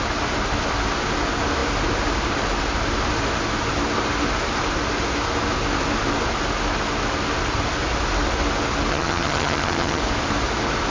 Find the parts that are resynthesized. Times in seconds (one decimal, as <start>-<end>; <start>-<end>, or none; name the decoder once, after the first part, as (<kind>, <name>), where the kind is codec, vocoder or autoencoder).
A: 8.9-10.0 (vocoder, HiFi-GAN)